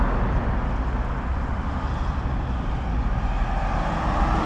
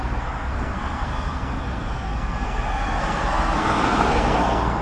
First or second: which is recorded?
first